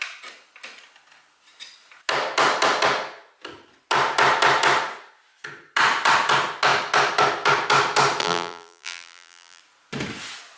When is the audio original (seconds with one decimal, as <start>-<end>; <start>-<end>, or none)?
0.0-8.2; 9.6-10.6